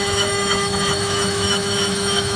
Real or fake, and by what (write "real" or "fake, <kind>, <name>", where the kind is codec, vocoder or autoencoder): fake, autoencoder, DAC-VAE